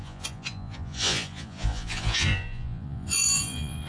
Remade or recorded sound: remade